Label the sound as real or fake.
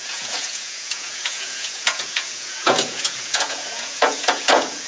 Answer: fake